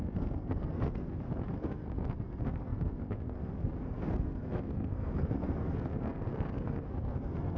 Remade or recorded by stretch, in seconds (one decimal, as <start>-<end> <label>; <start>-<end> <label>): 0.0-7.6 remade